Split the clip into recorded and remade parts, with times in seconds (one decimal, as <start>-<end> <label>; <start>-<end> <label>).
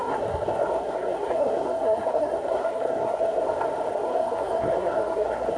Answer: 0.0-3.4 remade; 3.4-3.9 recorded; 3.9-5.6 remade